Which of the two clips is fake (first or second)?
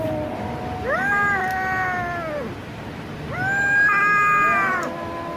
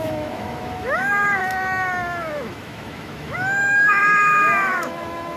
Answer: second